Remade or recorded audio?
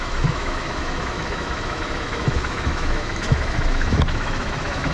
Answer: remade